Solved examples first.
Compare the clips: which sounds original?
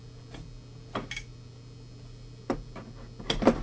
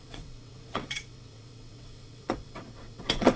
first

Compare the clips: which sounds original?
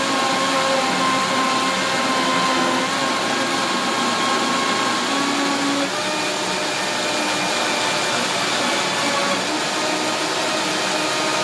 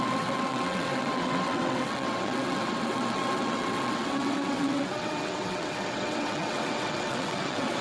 first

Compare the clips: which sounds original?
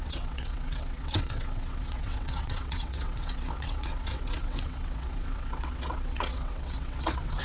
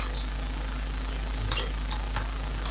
second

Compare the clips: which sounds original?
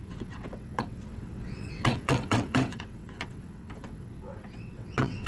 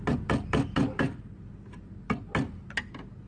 second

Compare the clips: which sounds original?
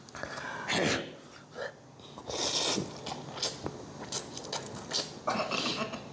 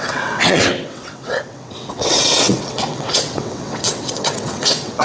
first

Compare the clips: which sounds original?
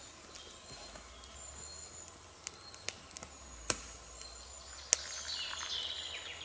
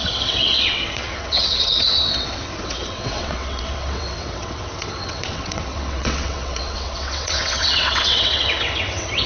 first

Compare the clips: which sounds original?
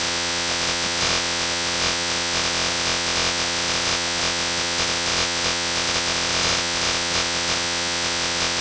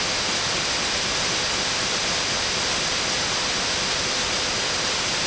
second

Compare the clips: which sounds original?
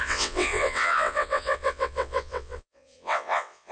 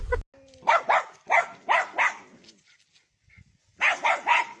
second